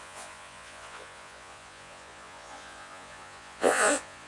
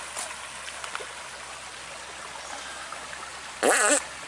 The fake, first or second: first